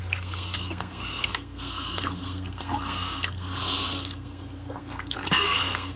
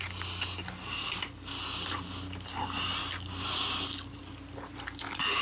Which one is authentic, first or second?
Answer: second